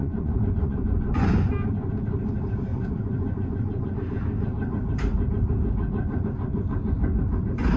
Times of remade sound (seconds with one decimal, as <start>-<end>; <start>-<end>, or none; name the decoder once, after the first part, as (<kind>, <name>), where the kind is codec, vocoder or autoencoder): 0.0-1.5 (vocoder, Vocos); 2.7-4.0